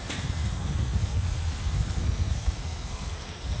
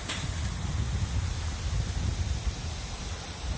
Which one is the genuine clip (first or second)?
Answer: second